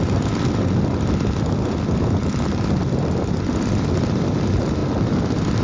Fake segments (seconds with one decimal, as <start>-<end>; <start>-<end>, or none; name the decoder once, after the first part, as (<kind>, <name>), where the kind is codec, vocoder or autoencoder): 4.8-5.6 (vocoder, BigVGAN v2)